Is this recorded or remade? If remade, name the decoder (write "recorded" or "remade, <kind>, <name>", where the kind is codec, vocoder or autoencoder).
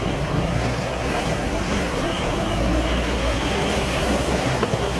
remade, codec, SNAC